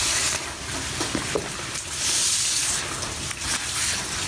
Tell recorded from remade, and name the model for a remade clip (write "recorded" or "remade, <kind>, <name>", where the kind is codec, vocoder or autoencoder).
recorded